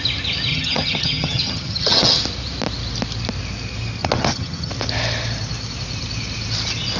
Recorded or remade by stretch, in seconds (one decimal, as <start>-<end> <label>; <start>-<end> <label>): 0.0-0.5 recorded; 0.5-2.2 remade; 2.2-4.0 recorded; 4.0-4.7 remade; 4.7-7.0 recorded